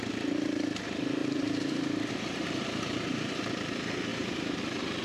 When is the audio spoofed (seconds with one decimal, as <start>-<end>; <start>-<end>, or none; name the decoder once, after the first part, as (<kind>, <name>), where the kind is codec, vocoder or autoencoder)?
1.2-3.4 (vocoder, BigVGAN v2); 4.1-4.6